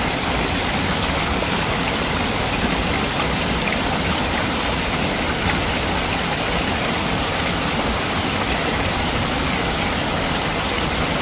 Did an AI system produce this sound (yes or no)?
no